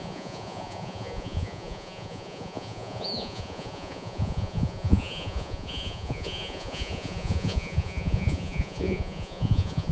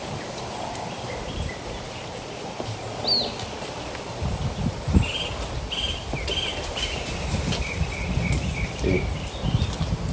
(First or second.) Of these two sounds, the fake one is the first